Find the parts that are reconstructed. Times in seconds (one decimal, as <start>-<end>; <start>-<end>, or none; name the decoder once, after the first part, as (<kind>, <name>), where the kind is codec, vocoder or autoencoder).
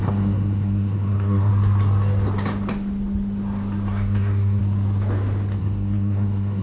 0.0-1.5 (codec, SNAC); 3.9-4.6; 5.6-6.6